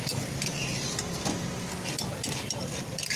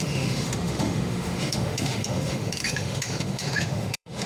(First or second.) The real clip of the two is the first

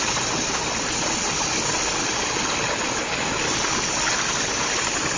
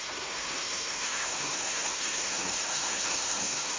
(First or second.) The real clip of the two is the first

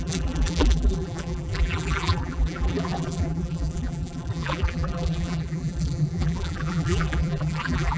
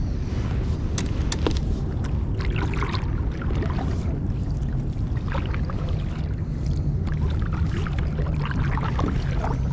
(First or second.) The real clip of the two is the second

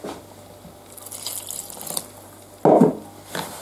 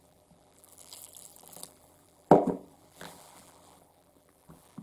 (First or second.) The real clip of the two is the first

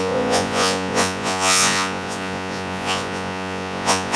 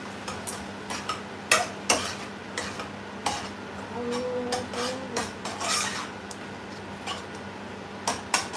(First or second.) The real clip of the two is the second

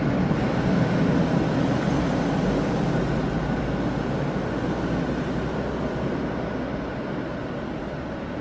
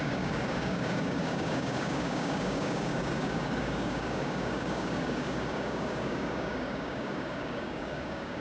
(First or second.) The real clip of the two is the first